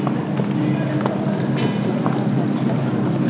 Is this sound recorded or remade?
recorded